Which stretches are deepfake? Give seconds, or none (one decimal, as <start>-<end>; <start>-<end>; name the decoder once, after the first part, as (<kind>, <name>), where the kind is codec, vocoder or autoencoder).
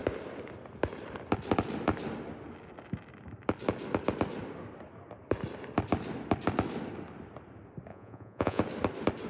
7.9-8.6 (vocoder, Vocos)